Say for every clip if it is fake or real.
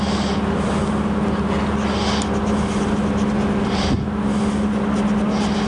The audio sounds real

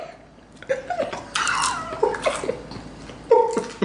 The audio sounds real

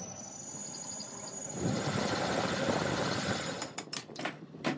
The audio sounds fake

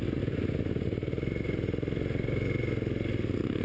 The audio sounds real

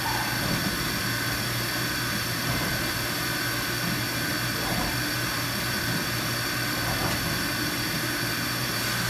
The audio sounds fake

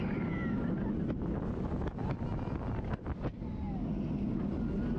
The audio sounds real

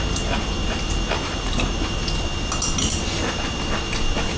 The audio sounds real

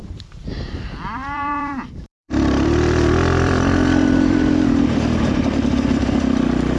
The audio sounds fake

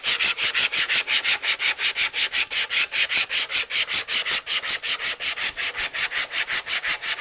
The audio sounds fake